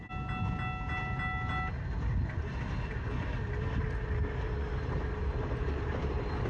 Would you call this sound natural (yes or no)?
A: yes